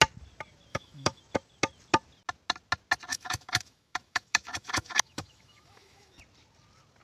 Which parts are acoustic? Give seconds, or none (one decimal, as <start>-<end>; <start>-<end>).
0.0-0.7; 1.2-3.1; 6.2-7.0